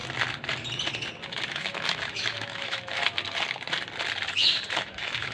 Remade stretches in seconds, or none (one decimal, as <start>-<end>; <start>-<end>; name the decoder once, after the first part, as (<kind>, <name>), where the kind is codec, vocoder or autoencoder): 1.5-3.0 (autoencoder, DAC-VAE); 4.3-5.3